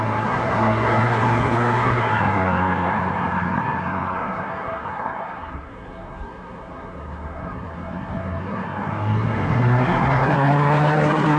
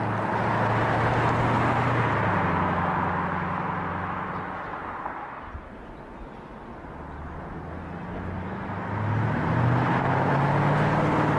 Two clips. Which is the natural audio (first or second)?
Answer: second